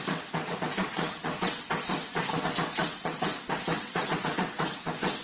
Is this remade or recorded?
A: remade